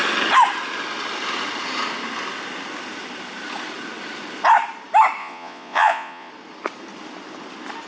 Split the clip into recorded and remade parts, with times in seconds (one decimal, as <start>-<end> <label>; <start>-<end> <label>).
0.0-5.2 recorded; 5.2-6.3 remade; 6.3-7.9 recorded